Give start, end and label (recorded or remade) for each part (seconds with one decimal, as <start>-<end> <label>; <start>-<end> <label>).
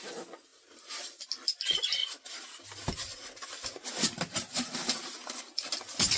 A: 0.0-6.2 recorded